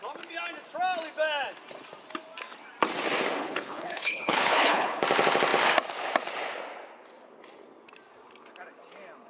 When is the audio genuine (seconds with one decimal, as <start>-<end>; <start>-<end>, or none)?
0.0-3.4; 5.0-9.3